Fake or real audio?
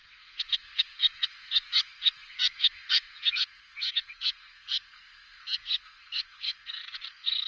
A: fake